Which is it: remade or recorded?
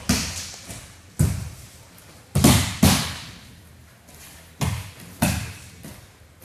recorded